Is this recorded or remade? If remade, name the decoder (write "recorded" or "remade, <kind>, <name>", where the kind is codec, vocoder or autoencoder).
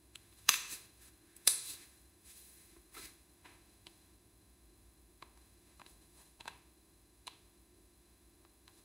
remade, autoencoder, DAC-VAE